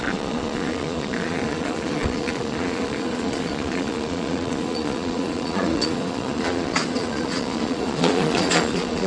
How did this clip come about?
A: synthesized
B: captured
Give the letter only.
A